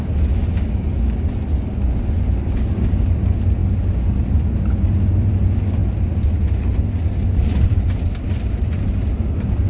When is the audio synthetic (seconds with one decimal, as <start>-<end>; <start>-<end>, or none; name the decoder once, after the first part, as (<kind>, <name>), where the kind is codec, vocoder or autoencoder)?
none